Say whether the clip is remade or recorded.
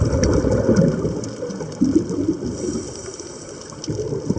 remade